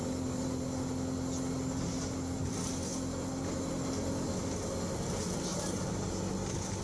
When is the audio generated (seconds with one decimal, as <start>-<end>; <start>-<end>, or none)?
5.5-6.1